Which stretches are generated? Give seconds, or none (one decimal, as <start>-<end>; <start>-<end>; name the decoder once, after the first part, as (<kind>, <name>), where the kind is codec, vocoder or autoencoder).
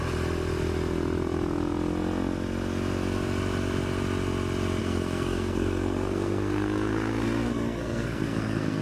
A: 4.8-8.8 (codec, SNAC)